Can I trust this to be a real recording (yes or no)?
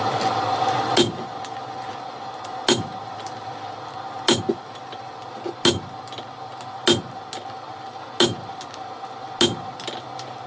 yes